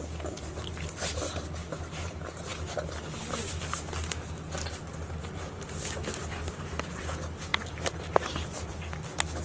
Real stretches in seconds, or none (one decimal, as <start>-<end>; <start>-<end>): 0.0-9.4